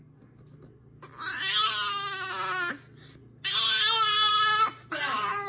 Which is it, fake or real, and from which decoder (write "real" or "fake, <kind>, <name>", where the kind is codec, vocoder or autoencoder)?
real